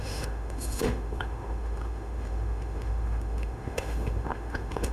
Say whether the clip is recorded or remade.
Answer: remade